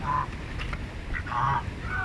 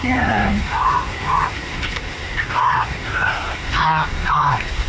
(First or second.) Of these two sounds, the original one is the first